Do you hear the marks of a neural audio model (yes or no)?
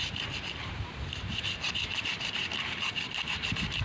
yes